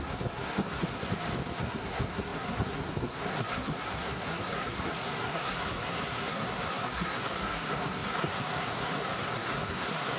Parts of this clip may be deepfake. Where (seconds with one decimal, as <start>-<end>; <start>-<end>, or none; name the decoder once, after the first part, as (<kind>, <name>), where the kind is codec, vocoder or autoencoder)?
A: 0.0-1.1 (codec, SNAC); 1.6-10.2